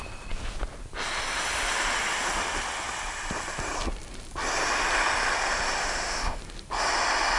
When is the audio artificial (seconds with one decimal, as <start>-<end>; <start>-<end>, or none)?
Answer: 5.8-6.4